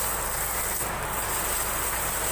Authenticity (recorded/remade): recorded